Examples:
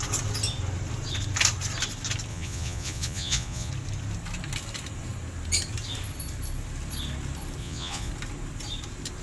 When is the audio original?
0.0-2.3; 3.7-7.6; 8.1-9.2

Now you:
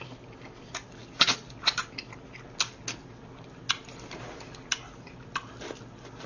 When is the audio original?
0.0-6.3